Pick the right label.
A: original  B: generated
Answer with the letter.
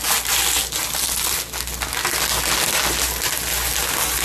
A